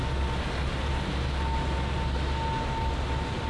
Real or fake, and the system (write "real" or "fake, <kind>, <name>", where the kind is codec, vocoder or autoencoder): real